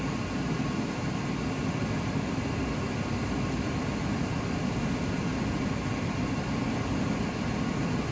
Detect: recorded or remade recorded